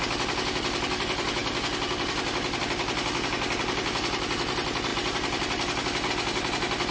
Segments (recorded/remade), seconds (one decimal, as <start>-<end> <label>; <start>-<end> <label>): 0.0-6.9 recorded

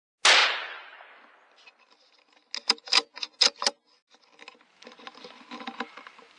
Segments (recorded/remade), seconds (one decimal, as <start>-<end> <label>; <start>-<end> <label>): 0.0-0.4 recorded; 0.4-1.1 remade; 1.1-6.4 recorded

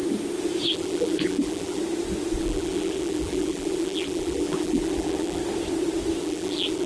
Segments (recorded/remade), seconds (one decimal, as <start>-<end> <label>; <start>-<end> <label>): 0.0-0.7 recorded; 0.7-1.8 remade; 1.8-2.4 recorded; 2.4-5.4 remade; 5.4-6.2 recorded; 6.2-6.9 remade

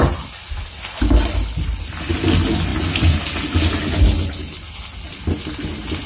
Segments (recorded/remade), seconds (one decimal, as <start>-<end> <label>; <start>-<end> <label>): 0.0-6.1 recorded

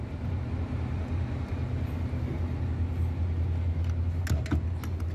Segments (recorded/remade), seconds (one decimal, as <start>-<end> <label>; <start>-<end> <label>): 0.0-5.1 recorded

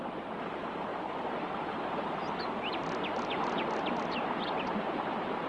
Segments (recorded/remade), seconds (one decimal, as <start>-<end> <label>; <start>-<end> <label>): 0.0-0.9 recorded; 0.9-3.9 remade; 3.9-5.5 recorded